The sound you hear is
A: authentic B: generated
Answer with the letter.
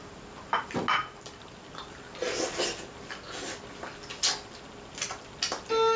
A